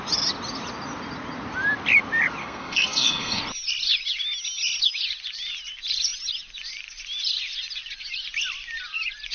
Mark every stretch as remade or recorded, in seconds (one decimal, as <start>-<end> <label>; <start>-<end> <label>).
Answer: 0.0-2.4 recorded; 2.4-3.4 remade; 3.4-9.3 recorded